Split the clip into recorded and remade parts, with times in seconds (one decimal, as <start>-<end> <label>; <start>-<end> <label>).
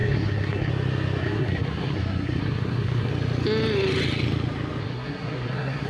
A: 0.0-0.7 remade; 0.7-1.2 recorded; 1.2-3.1 remade; 3.1-4.8 recorded; 4.8-5.9 remade